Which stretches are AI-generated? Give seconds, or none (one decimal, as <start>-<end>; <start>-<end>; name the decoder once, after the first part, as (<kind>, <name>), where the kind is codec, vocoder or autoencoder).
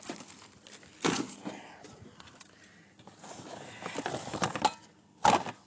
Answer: none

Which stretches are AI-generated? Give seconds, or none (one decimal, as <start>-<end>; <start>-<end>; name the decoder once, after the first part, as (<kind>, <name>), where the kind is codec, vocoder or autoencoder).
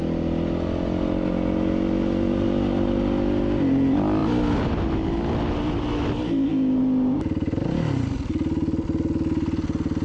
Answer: none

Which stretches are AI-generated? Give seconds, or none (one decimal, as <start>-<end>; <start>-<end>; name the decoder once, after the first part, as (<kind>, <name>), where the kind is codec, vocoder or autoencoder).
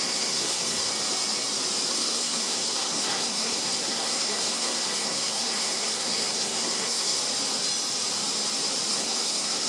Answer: 0.0-0.9 (codec, SNAC); 1.9-7.2; 8.9-9.7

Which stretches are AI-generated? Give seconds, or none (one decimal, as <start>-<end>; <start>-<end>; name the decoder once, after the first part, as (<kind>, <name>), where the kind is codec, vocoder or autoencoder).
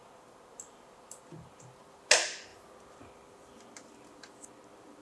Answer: none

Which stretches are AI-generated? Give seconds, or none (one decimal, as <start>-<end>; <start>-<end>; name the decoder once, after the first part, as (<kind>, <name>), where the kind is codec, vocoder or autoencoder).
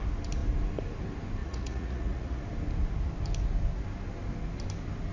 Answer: 1.4-2.4 (vocoder, Vocos)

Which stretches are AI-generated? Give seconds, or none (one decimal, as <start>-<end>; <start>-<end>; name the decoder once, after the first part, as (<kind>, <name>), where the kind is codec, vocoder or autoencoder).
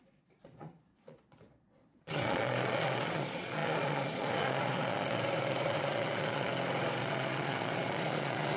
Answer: 0.0-6.5 (vocoder, Vocos); 7.0-8.6